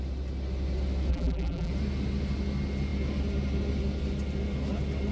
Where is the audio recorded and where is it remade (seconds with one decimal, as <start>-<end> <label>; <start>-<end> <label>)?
0.0-1.1 recorded; 1.1-1.7 remade; 1.7-5.1 recorded